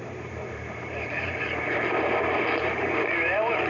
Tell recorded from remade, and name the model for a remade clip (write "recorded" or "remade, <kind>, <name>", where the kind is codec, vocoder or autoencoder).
remade, vocoder, BigVGAN v2